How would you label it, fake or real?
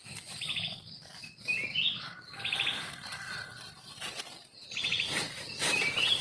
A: real